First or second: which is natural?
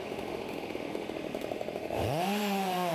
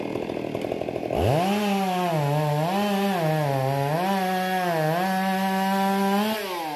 second